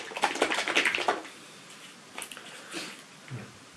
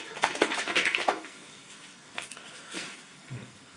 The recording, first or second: first